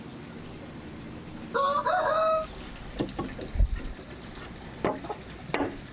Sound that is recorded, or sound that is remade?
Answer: recorded